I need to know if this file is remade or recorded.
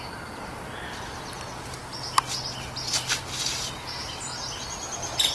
recorded